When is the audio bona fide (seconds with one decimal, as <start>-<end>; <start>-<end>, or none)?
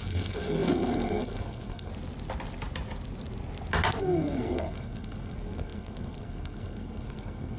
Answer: 1.9-4.0